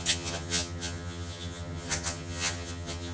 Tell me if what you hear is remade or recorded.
remade